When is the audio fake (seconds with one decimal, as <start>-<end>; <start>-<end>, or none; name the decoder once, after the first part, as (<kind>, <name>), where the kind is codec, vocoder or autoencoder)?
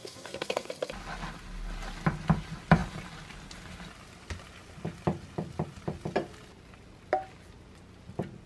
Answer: 0.0-0.7 (codec, SNAC)